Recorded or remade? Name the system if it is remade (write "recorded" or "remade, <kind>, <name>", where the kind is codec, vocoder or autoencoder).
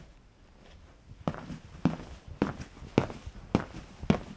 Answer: recorded